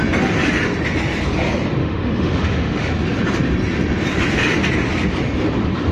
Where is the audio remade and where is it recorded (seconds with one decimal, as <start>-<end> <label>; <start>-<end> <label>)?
0.0-1.8 recorded; 1.8-2.9 remade; 2.9-5.9 recorded